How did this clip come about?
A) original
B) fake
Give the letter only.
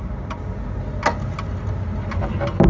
A